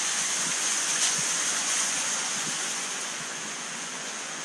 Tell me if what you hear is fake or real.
fake